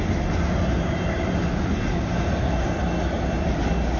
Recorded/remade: recorded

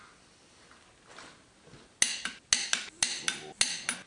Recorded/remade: recorded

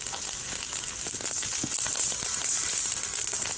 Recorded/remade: recorded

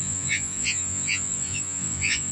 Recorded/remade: remade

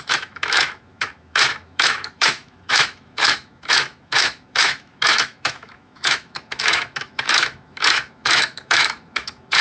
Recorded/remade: remade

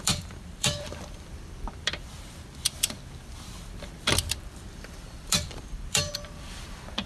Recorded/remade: remade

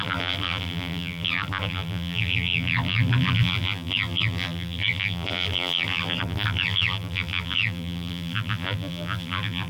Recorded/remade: remade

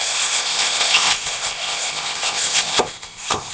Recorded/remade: remade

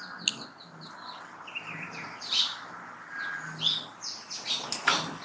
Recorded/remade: recorded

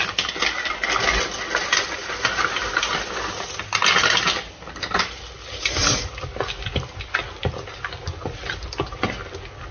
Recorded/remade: recorded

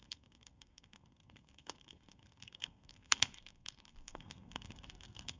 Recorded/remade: remade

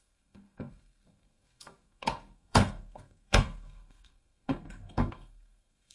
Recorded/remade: remade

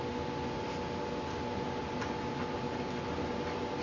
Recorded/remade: recorded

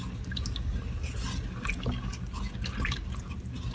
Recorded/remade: recorded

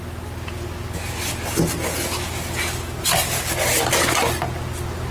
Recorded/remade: recorded